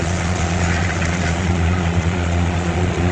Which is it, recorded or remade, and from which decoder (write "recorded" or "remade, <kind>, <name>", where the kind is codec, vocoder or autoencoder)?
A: remade, vocoder, Vocos